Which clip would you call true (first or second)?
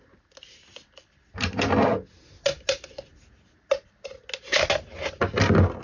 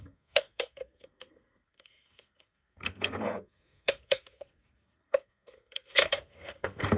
first